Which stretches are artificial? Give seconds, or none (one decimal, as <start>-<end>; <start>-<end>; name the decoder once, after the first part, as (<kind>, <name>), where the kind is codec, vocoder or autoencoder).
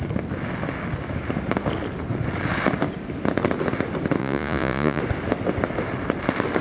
4.2-5.0 (vocoder, Vocos)